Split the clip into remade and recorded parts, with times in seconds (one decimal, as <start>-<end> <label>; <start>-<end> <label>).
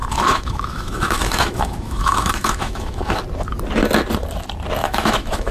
0.0-3.2 remade; 3.2-4.8 recorded; 4.8-5.5 remade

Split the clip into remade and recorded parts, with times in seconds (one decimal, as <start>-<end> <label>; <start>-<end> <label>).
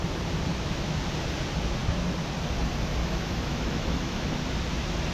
0.0-0.5 recorded; 0.5-1.0 remade; 1.0-3.0 recorded; 3.0-4.4 remade; 4.4-5.1 recorded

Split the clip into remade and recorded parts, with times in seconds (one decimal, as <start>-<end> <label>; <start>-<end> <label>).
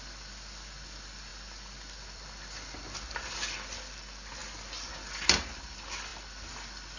0.0-7.0 recorded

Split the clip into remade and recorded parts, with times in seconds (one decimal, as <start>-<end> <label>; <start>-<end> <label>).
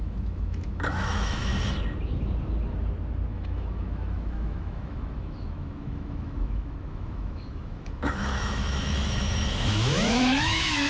0.0-1.5 remade; 1.5-3.3 recorded; 3.3-10.9 remade